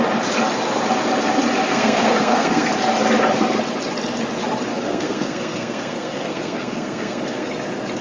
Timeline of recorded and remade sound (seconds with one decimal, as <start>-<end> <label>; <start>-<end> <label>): 0.0-1.7 recorded; 1.7-2.7 remade; 2.7-4.7 recorded; 4.7-7.5 remade; 7.5-8.0 recorded